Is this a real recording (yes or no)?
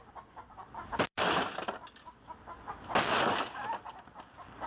yes